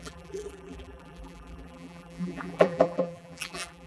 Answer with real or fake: fake